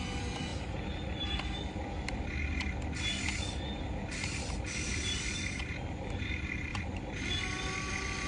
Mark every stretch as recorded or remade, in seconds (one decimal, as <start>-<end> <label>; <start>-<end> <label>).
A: 0.0-0.5 remade; 0.5-4.8 recorded; 4.8-6.7 remade; 6.7-7.4 recorded; 7.4-8.3 remade